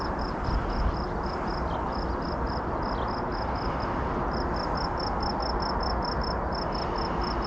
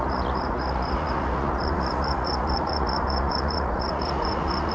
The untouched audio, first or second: first